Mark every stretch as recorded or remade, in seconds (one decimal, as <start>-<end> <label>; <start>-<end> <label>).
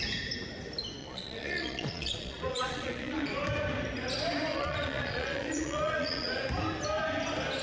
0.0-1.0 recorded; 1.0-3.3 remade; 3.3-4.5 recorded; 4.5-6.4 remade; 6.4-7.6 recorded